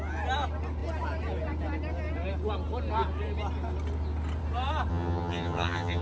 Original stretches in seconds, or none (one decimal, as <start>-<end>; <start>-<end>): 0.0-4.9